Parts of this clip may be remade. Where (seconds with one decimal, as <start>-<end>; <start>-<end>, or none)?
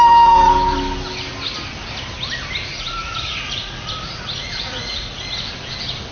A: 2.7-5.2